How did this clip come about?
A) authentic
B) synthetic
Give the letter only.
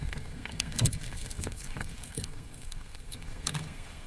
B